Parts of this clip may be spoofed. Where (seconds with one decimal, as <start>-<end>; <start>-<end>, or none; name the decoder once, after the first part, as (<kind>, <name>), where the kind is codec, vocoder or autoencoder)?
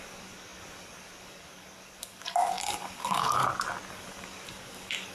0.0-3.4 (codec, DAC); 3.9-5.1